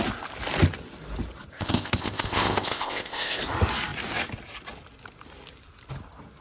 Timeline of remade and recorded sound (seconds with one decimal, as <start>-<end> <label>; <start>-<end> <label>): 0.0-1.5 recorded; 1.5-3.4 remade; 3.4-6.4 recorded

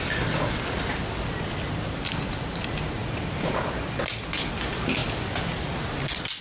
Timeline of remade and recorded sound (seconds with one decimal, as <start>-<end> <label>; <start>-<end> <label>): 0.0-6.4 recorded

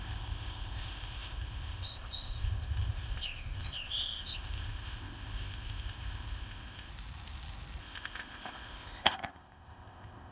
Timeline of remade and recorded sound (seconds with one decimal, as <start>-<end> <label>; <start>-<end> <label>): 0.0-6.9 remade; 6.9-7.8 recorded; 7.8-10.3 remade

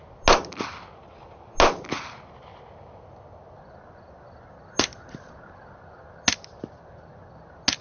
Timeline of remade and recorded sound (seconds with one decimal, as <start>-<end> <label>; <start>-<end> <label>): 0.0-7.8 recorded

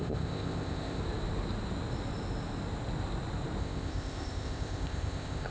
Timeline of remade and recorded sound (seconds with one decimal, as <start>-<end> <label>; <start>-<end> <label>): 0.0-1.0 remade; 1.0-3.6 recorded; 3.6-5.5 remade

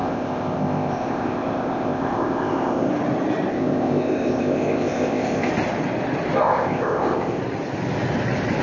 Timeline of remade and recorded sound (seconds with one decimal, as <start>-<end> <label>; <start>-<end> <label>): 0.0-2.9 remade; 2.9-3.5 recorded; 3.5-5.5 remade; 5.5-6.4 recorded; 6.4-7.4 remade; 7.4-8.6 recorded

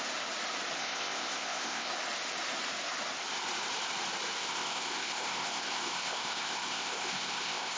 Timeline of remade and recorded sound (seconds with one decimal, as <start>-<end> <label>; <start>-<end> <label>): 0.0-0.8 recorded; 0.8-1.9 remade; 1.9-4.4 recorded; 4.4-7.8 remade